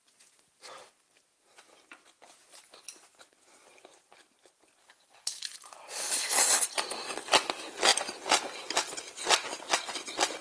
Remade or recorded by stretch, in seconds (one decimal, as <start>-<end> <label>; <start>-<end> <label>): 0.0-4.8 recorded; 4.8-5.4 remade; 5.4-10.4 recorded